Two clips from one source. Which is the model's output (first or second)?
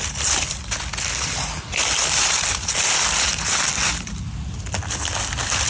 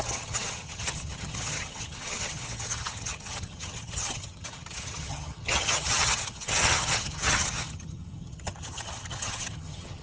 second